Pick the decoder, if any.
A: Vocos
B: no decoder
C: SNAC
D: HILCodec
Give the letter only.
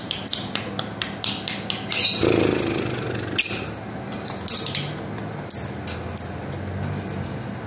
B